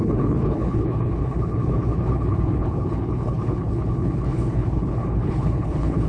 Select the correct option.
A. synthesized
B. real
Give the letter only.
A